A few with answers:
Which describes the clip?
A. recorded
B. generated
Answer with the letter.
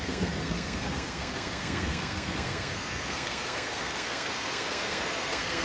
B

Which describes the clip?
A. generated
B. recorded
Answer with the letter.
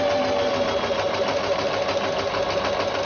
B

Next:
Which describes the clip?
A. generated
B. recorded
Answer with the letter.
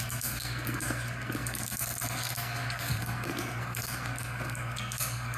A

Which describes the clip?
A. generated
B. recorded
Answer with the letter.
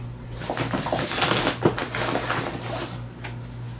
B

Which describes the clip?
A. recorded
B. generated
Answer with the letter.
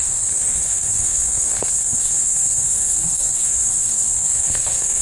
B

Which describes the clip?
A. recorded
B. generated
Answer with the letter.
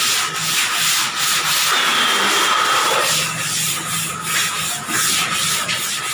A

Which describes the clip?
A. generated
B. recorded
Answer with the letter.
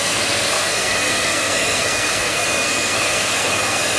A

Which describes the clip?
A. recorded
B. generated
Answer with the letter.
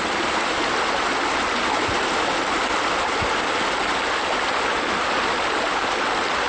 A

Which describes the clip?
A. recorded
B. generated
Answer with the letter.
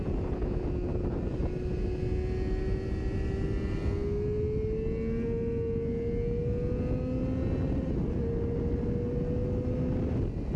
A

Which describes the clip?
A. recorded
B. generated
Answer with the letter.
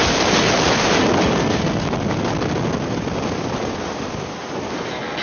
A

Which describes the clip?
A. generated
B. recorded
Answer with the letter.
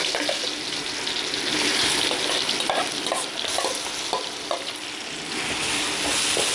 B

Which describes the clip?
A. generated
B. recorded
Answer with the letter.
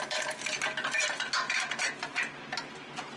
B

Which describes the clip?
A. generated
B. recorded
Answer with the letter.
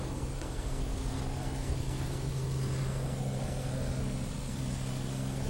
A